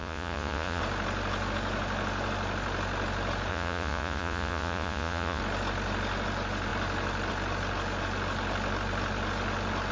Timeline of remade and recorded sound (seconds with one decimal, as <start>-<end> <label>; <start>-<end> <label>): 0.0-0.8 remade; 0.8-3.5 recorded; 3.5-5.4 remade; 5.4-9.9 recorded